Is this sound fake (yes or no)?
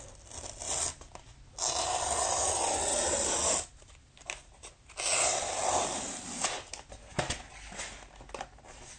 no